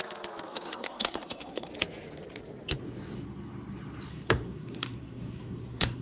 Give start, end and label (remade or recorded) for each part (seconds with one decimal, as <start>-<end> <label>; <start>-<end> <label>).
0.0-0.5 recorded; 0.5-1.7 remade; 1.7-4.1 recorded; 4.1-6.0 remade